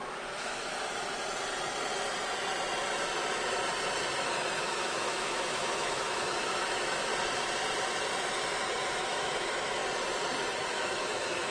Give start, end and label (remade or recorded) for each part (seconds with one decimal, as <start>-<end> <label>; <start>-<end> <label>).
0.0-0.7 remade; 0.7-4.6 recorded; 4.6-7.1 remade; 7.1-8.9 recorded; 8.9-9.8 remade; 9.8-10.7 recorded; 10.7-11.5 remade